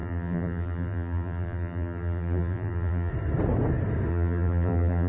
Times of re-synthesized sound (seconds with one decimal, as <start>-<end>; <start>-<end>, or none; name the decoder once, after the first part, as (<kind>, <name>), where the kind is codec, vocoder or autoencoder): 0.0-3.1 (vocoder, BigVGAN v2); 4.1-5.1

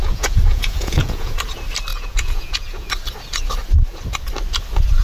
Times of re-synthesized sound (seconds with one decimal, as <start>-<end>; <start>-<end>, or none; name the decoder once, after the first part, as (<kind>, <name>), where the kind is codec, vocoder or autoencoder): 0.0-1.3 (vocoder, Vocos); 1.9-2.9

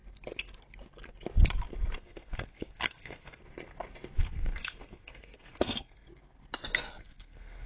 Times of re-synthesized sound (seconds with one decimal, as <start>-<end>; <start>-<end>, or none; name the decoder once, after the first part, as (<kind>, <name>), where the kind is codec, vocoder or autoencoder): 2.0-3.4 (codec, SNAC); 4.2-6.1; 7.0-7.7

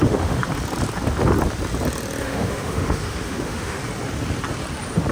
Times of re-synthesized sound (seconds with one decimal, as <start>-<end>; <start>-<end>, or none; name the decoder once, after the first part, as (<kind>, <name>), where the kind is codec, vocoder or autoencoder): 0.0-0.4 (autoencoder, DAC-VAE); 2.2-3.8

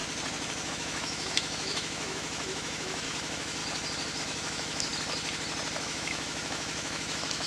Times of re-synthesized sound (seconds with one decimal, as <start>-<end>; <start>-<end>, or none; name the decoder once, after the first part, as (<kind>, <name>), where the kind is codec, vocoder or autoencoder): 0.7-3.6 (autoencoder, DAC-VAE); 4.2-4.9; 5.8-7.5

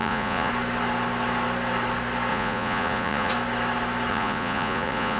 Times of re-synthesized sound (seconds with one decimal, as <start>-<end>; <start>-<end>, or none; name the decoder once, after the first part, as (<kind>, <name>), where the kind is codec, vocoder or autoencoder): 0.0-0.5 (vocoder, Vocos); 2.3-3.3; 4.1-5.2

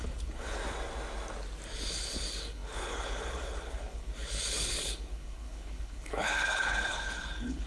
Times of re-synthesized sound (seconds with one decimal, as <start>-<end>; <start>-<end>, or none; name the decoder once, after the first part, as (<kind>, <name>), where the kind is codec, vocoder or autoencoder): 0.0-0.6 (codec, HILCodec); 1.9-7.7